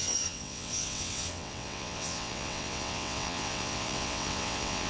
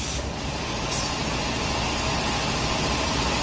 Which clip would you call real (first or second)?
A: second